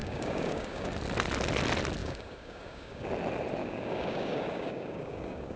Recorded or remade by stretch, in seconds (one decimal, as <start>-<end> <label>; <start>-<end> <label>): 0.0-0.9 remade; 0.9-2.0 recorded; 2.0-3.1 remade; 3.1-3.6 recorded; 3.6-5.6 remade